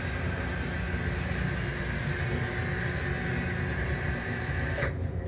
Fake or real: real